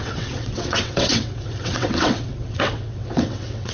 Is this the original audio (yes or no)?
no